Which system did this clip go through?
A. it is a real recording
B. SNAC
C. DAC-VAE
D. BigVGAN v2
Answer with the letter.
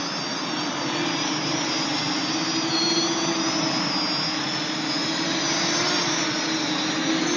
A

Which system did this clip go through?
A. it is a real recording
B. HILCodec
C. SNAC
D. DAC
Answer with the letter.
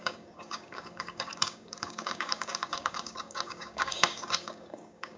D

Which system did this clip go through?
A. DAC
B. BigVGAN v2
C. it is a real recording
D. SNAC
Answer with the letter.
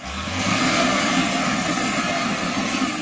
D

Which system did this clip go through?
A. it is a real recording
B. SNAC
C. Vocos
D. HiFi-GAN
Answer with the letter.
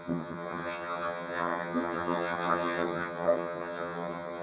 D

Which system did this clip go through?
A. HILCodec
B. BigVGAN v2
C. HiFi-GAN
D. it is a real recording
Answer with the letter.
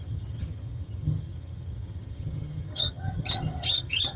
C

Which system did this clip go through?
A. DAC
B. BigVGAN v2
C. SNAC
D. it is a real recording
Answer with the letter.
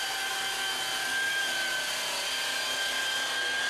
D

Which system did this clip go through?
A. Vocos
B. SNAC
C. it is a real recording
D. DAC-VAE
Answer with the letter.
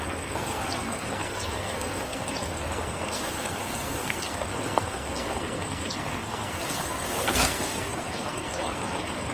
B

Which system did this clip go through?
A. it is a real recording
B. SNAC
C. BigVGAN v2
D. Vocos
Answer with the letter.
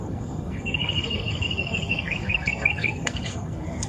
B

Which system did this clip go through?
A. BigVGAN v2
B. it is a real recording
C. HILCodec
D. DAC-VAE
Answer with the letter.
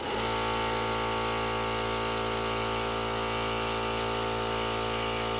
B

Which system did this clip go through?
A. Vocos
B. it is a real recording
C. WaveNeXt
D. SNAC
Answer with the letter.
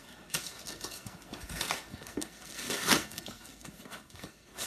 D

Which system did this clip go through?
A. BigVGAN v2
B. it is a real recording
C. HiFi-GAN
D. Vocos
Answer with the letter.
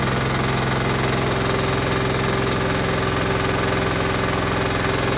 B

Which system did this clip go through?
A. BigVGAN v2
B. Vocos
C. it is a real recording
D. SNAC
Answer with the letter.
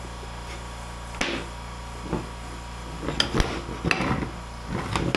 C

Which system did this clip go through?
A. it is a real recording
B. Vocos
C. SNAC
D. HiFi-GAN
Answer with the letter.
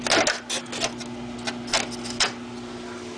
A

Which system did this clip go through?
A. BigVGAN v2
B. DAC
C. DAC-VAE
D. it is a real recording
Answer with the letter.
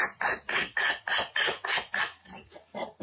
D